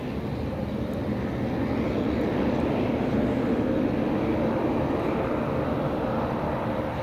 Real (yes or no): yes